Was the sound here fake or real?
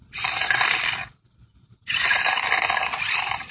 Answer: fake